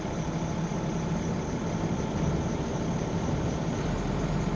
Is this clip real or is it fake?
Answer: real